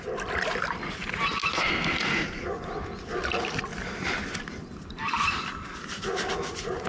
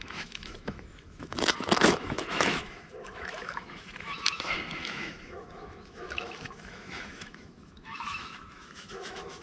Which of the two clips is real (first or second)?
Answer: first